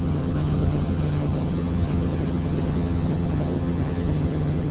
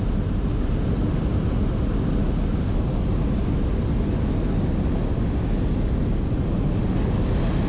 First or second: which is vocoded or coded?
first